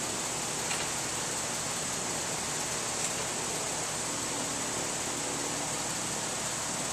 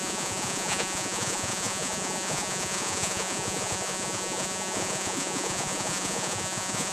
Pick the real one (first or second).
first